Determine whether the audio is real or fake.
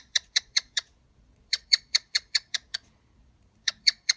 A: fake